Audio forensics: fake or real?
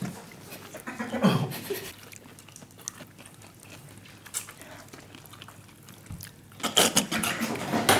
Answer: real